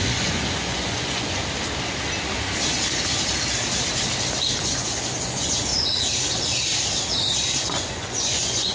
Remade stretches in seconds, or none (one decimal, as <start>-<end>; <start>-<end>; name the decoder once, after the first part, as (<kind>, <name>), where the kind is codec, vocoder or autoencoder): 0.0-1.4 (vocoder, Vocos); 4.6-5.7; 6.3-6.7; 7.6-8.7